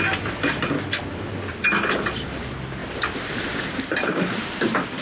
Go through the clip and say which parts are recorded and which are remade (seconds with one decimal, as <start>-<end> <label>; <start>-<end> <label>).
0.0-2.8 recorded; 2.8-4.6 remade; 4.6-5.0 recorded